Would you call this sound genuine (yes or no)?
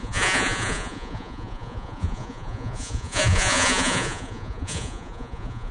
no